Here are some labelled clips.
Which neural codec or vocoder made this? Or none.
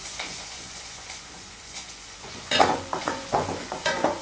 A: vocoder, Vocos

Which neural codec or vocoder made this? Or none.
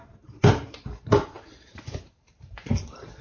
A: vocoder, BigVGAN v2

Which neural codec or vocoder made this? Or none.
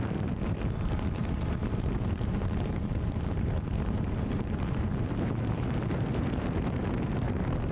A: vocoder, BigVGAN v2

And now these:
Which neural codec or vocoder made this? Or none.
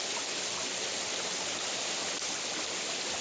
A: none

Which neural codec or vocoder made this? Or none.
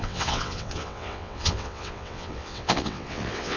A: vocoder, WaveNeXt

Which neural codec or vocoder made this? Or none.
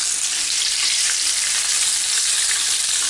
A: none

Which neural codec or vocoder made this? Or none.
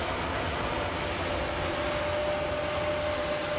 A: none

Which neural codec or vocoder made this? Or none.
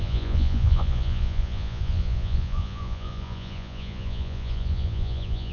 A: vocoder, Vocos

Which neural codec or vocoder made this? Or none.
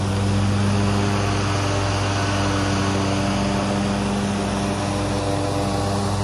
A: none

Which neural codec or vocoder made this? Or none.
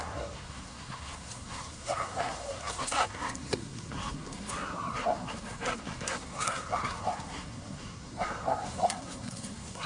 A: codec, SNAC